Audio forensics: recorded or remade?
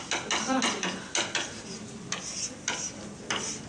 recorded